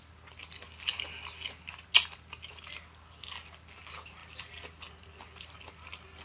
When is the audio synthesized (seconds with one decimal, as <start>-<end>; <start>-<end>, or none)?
none